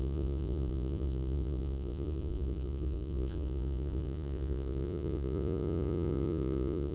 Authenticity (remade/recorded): remade